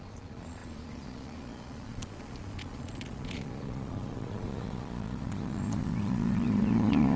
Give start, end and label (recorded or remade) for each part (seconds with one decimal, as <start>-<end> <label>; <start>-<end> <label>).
0.0-7.2 remade